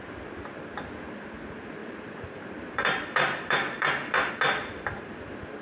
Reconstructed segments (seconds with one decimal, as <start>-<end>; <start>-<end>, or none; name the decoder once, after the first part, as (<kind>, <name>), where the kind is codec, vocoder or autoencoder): 1.8-4.3 (vocoder, BigVGAN v2)